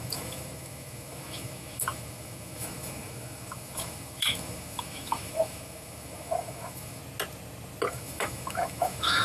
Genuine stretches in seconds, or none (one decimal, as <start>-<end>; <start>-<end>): 7.0-7.9